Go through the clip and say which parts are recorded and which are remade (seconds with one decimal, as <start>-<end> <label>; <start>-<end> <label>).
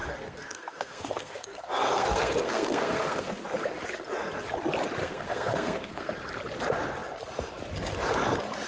0.0-3.3 remade; 3.3-5.0 recorded; 5.0-6.1 remade; 6.1-8.7 recorded